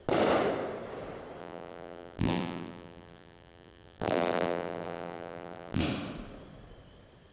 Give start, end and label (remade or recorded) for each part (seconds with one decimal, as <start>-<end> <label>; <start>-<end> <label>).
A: 0.0-1.4 recorded; 1.4-5.8 remade; 5.8-7.3 recorded